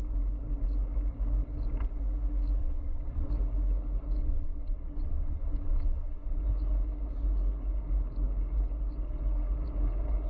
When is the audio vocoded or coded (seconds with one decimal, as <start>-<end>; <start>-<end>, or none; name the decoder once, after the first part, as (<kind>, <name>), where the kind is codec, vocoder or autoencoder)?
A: 2.6-3.3 (vocoder, WaveNeXt); 4.2-6.4